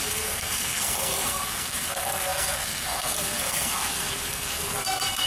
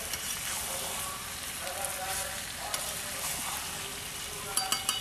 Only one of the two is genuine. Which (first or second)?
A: second